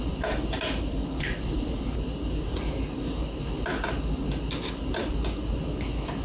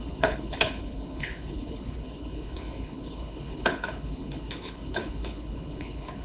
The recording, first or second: first